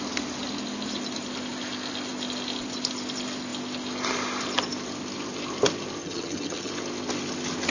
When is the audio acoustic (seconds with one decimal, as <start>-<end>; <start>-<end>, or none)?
0.0-6.0; 6.7-7.7